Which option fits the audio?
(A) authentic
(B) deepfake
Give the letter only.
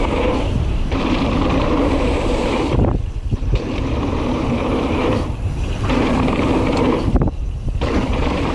B